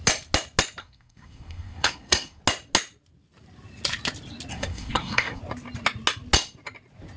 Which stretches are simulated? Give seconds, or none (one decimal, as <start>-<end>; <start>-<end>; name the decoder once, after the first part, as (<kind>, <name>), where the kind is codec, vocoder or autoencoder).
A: 0.8-2.4 (codec, SNAC); 4.5-5.4